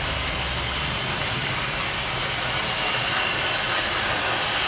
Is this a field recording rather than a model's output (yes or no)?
yes